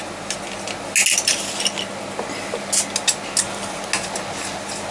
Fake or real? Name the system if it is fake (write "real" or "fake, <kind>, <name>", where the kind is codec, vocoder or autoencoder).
real